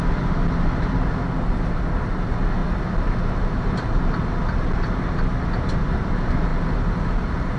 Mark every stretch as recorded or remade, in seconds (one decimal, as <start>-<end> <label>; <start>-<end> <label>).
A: 0.0-7.6 recorded